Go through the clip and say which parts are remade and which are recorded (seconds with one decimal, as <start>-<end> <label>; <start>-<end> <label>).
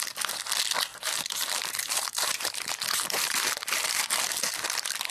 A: 0.0-0.9 recorded; 0.9-4.0 remade; 4.0-5.1 recorded